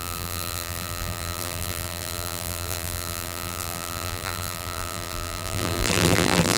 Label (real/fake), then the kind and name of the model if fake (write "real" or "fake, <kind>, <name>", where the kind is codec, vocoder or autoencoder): fake, vocoder, BigVGAN v2